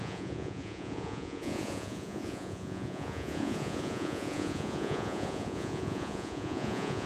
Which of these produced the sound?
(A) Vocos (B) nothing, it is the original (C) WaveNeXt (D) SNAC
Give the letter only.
A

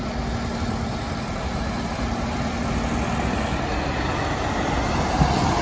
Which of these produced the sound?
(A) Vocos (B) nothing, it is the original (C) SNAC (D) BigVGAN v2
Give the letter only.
B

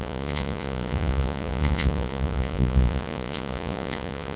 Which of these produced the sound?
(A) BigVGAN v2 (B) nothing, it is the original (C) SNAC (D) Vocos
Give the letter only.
D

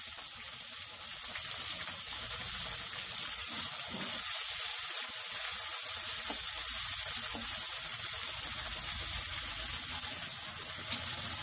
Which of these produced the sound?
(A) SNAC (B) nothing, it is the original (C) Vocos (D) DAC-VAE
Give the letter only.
B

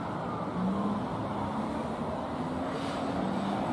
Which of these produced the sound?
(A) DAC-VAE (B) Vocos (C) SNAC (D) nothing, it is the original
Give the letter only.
D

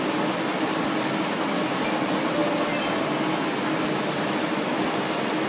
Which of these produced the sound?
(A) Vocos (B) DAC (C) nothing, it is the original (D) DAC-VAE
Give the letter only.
C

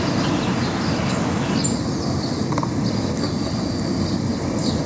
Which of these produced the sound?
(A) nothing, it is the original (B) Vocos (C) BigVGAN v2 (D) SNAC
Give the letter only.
A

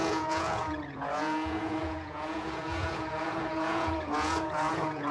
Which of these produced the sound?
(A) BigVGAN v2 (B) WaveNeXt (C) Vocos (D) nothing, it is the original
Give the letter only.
C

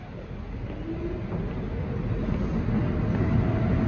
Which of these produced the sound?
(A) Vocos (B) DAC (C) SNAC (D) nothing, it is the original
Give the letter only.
D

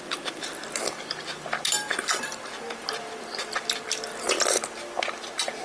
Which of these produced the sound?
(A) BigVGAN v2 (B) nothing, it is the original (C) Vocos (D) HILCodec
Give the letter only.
B